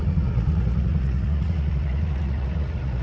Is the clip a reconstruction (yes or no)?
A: yes